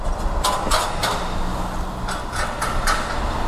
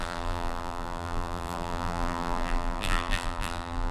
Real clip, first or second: first